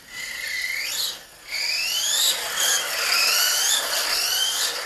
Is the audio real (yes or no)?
yes